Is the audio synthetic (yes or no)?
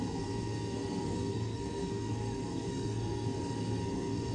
yes